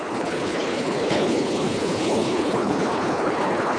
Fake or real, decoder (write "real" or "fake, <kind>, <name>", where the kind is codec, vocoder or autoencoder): fake, codec, HILCodec